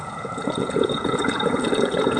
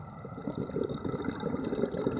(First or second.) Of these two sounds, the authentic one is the second